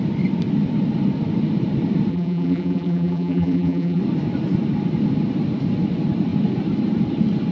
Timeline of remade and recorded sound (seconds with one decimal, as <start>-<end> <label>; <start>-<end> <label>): 0.0-2.1 recorded; 2.1-4.0 remade; 4.0-7.5 recorded